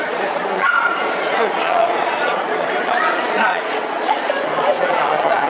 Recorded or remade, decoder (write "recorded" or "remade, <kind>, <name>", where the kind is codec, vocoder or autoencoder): remade, vocoder, Vocos